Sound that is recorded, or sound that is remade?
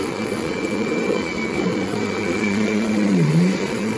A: remade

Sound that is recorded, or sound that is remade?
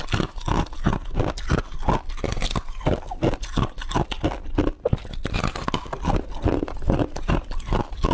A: recorded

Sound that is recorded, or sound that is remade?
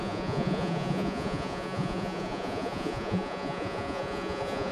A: remade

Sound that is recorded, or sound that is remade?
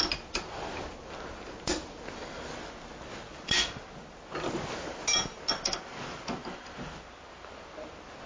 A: recorded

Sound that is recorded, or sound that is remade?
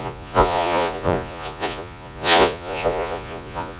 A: remade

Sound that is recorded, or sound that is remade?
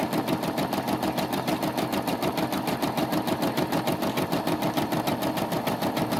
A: recorded